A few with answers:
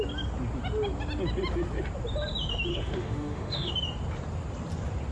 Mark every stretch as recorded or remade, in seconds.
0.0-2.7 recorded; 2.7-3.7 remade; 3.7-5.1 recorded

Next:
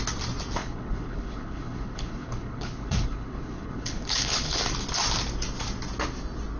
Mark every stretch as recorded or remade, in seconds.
0.0-0.6 recorded; 0.6-4.6 remade; 4.6-6.6 recorded

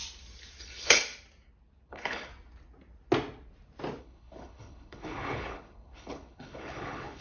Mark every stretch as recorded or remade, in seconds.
0.0-0.6 recorded; 0.6-1.0 remade; 1.0-1.9 recorded; 1.9-2.3 remade; 2.3-4.0 recorded; 4.0-7.2 remade

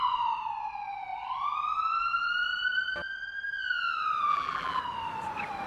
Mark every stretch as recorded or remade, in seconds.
0.0-4.3 recorded; 4.3-4.8 remade; 4.8-5.7 recorded

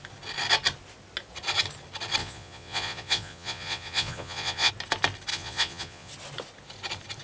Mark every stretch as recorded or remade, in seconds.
0.0-2.2 recorded; 2.2-4.7 remade; 4.7-5.3 recorded; 5.3-6.1 remade; 6.1-7.2 recorded

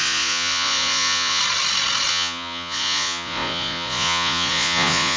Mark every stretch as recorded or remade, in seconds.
0.0-1.4 remade; 1.4-2.1 recorded; 2.1-5.2 remade